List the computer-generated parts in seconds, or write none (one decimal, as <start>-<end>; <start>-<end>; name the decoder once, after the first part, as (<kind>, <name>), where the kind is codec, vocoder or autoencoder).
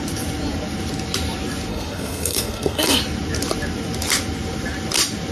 1.7-3.0 (codec, SNAC)